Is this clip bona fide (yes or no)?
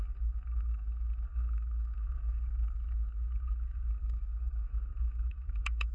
no